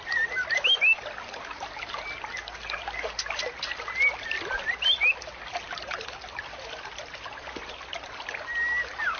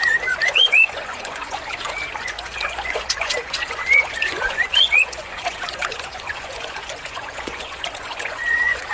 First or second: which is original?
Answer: first